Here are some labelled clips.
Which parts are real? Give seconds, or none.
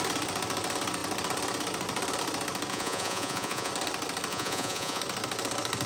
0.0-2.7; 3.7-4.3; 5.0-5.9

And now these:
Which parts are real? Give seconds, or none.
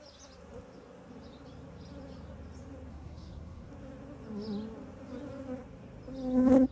0.0-2.9; 3.7-6.7